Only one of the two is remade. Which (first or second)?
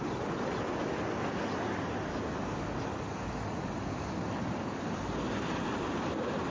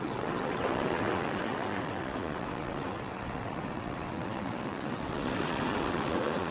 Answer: second